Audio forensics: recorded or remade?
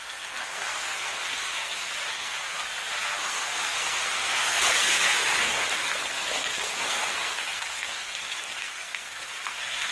remade